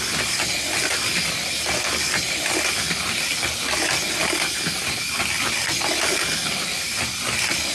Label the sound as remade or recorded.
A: recorded